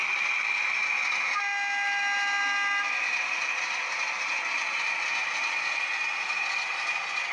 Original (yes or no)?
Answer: yes